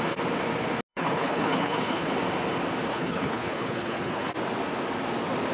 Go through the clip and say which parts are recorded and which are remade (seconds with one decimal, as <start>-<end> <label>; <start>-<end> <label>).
0.0-0.9 recorded; 0.9-2.1 remade; 2.1-2.9 recorded; 2.9-4.3 remade; 4.3-5.5 recorded